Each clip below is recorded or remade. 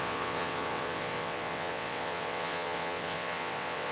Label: remade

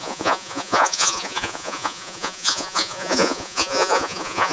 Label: remade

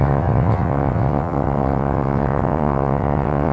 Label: remade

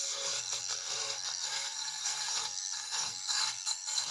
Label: remade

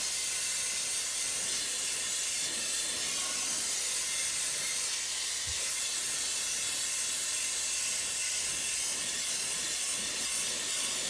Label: recorded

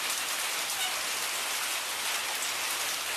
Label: recorded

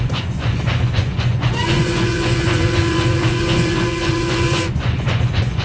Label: remade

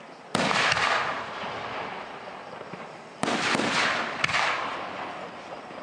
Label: recorded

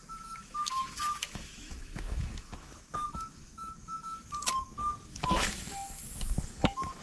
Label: remade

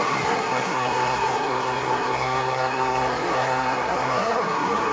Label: remade